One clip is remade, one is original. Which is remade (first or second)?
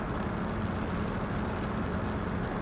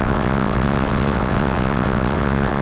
second